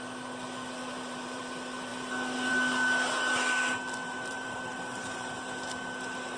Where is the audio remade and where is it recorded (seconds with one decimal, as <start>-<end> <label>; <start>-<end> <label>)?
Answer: 0.0-0.8 recorded; 0.8-1.4 remade; 1.4-4.0 recorded; 4.0-5.4 remade; 5.4-6.4 recorded